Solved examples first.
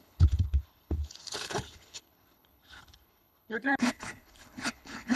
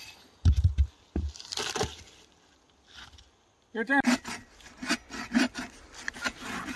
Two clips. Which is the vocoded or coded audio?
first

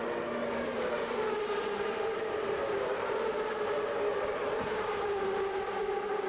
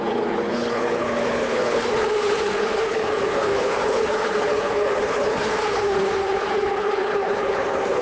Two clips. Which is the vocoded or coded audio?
second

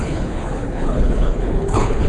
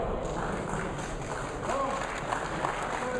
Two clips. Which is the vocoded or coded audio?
first